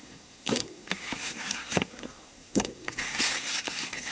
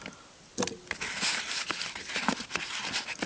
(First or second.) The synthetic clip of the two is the first